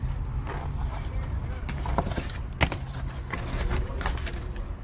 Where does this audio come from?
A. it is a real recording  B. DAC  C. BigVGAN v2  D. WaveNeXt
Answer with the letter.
A